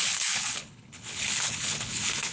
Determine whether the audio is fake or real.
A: fake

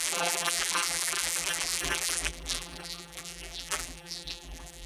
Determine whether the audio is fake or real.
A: fake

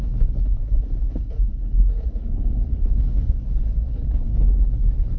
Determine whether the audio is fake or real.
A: fake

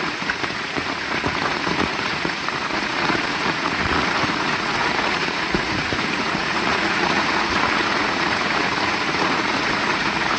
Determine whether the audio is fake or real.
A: fake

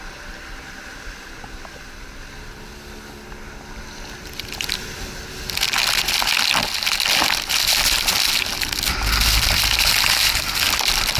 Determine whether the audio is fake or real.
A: real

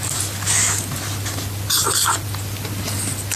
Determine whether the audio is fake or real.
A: real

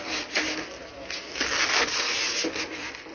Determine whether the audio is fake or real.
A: real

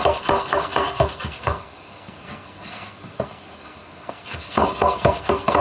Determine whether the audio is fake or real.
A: fake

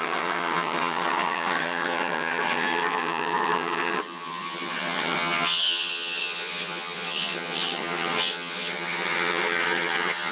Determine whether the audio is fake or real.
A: fake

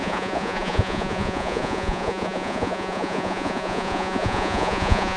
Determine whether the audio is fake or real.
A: fake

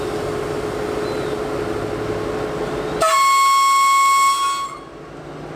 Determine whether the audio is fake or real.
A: real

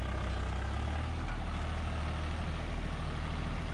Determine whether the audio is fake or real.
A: real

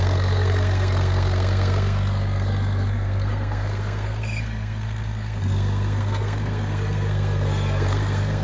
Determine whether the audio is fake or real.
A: fake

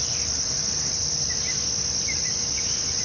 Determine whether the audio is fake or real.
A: real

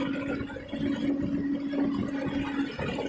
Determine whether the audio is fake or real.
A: real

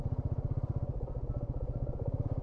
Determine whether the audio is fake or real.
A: real